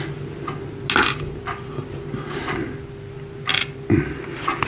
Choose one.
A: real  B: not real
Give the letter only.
A